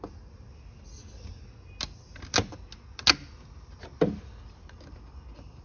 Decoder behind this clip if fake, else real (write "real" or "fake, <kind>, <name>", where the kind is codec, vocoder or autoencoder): real